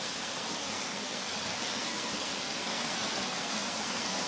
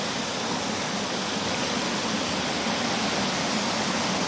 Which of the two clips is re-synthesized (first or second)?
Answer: first